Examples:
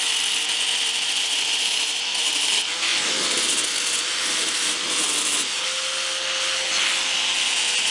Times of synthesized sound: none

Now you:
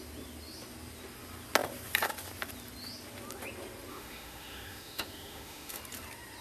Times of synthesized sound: 3.9-5.8 (autoencoder, DAC-VAE)

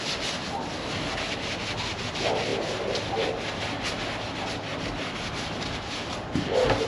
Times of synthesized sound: none